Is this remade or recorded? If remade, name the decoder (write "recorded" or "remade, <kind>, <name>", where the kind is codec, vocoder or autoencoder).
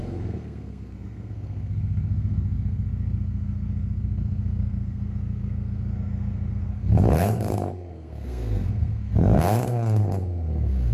remade, codec, SNAC